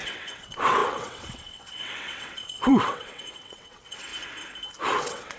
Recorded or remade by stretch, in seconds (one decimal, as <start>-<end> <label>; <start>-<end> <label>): 0.0-4.1 remade; 4.1-5.0 recorded; 5.0-5.4 remade